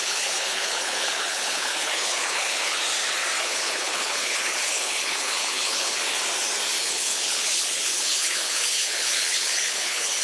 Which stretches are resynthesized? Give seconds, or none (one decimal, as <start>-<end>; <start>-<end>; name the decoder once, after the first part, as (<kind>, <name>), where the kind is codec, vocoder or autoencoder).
0.0-2.8 (codec, HILCodec); 3.4-6.0; 6.8-10.2